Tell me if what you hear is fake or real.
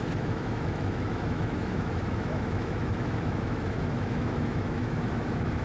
fake